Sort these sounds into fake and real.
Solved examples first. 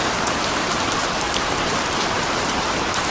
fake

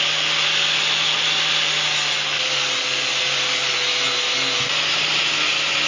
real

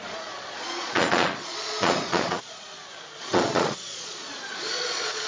fake